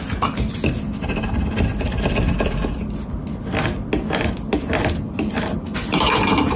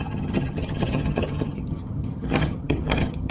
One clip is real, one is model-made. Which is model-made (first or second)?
second